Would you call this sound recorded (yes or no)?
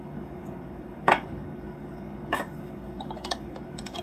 no